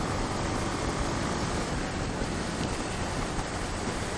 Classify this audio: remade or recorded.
remade